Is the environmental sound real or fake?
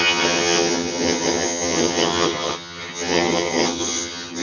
fake